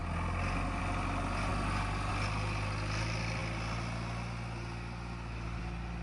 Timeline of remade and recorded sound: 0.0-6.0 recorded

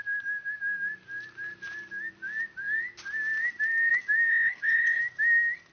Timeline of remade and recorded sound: 0.0-4.3 recorded; 4.3-5.0 remade; 5.0-5.7 recorded

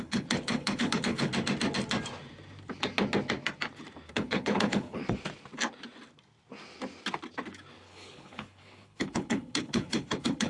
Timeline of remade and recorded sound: 0.0-1.3 remade; 1.3-4.1 recorded; 4.1-5.0 remade; 5.0-7.7 recorded; 7.7-10.5 remade

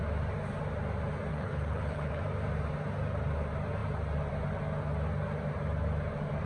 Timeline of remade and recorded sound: 0.0-1.3 recorded; 1.3-2.2 remade; 2.2-6.5 recorded

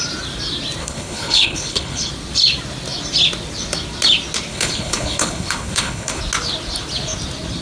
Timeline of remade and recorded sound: 0.0-0.8 recorded; 0.8-2.1 remade; 2.1-4.5 recorded; 4.5-6.2 remade; 6.2-7.6 recorded

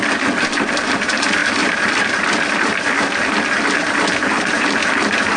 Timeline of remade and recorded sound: 0.0-5.4 recorded

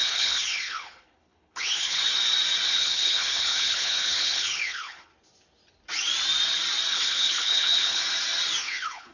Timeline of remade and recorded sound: 0.0-2.0 remade; 2.0-2.7 recorded; 2.7-5.1 remade; 5.1-6.9 recorded; 6.9-8.0 remade; 8.0-8.6 recorded; 8.6-9.1 remade